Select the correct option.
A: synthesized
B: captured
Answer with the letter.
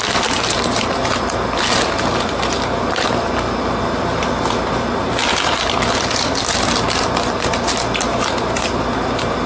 B